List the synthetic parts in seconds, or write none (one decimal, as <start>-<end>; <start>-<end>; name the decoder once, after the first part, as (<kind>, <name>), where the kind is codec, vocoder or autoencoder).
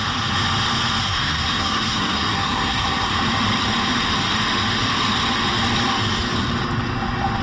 1.0-3.1 (codec, SNAC)